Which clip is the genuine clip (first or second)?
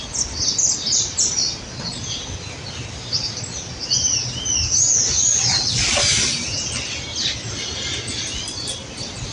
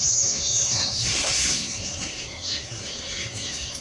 first